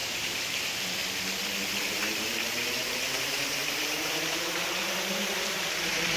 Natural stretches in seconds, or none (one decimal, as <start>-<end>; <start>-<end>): 1.0-1.9